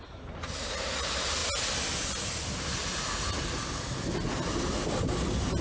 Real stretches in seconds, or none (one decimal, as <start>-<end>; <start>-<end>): 0.0-5.6